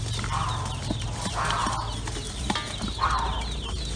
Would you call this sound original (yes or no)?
yes